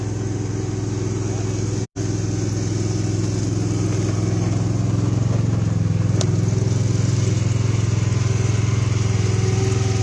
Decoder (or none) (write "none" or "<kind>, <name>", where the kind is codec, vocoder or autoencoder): none